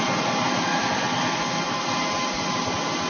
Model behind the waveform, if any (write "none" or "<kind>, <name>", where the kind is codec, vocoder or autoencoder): none